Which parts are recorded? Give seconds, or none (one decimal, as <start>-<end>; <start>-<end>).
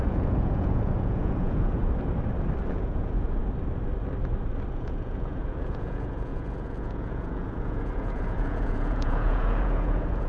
1.8-2.7; 3.4-4.7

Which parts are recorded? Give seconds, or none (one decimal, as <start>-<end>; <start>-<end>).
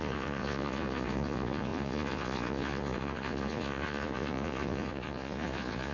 none